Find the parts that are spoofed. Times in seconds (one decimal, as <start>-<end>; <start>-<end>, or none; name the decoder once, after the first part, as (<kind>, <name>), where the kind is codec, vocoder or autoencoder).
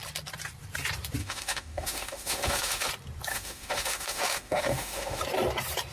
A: 1.2-2.9 (autoencoder, DAC-VAE); 3.3-5.2